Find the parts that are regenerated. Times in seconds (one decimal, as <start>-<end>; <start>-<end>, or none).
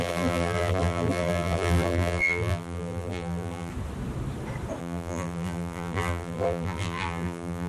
0.0-3.7; 4.8-7.7